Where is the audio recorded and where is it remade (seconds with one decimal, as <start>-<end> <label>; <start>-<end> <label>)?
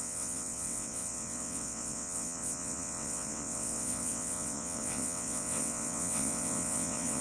0.0-7.2 remade